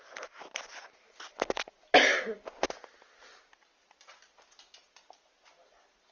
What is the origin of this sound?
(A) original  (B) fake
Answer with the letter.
A